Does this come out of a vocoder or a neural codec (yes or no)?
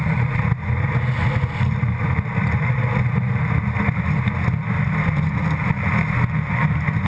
no